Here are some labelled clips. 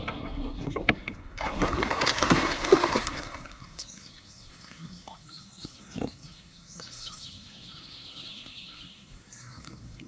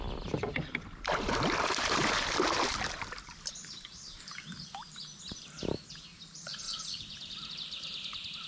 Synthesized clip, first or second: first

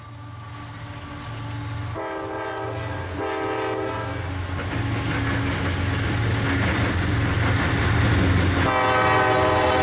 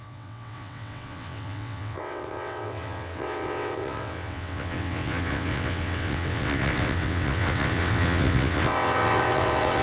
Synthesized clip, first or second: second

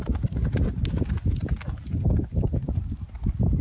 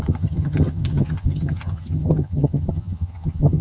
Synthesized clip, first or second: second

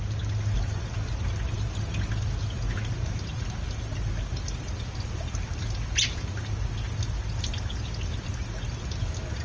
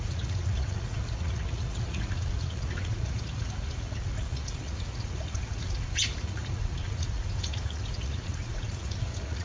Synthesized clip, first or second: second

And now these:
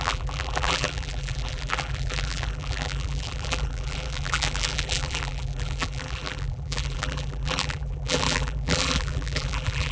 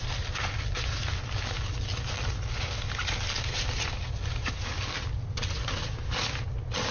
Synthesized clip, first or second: first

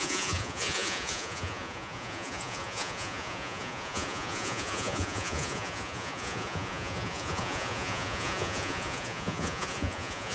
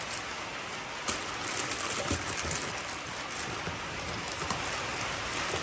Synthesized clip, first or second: first